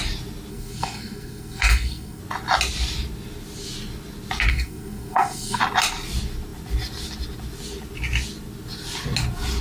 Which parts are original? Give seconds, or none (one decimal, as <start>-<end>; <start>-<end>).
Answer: 0.0-0.5; 2.2-4.5; 5.6-9.6

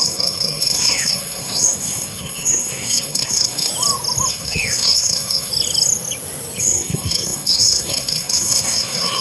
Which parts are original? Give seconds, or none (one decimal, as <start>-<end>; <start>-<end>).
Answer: 3.7-4.3; 5.5-6.6

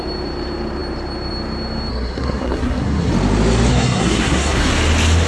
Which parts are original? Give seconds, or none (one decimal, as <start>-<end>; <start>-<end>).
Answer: 0.0-1.9; 3.1-3.7; 4.7-5.3

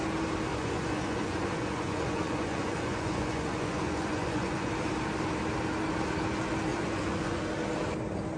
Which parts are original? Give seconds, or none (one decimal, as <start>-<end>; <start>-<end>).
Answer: 0.0-0.5; 4.7-6.7; 7.4-8.4

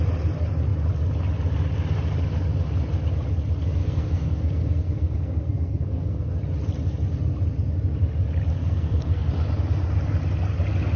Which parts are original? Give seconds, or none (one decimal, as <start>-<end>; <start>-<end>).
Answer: 0.0-3.8; 6.3-8.6; 9.3-11.0

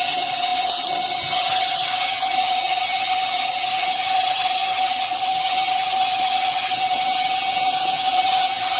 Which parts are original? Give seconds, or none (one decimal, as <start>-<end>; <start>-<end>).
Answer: none

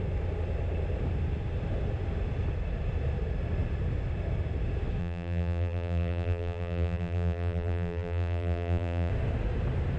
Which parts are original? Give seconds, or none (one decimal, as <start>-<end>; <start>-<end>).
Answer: 0.0-5.0; 9.1-10.0